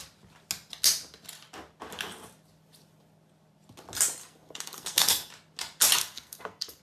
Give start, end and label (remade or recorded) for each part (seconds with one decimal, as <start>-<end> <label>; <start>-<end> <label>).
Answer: 0.0-4.2 recorded; 4.2-5.3 remade; 5.3-6.0 recorded; 6.0-6.8 remade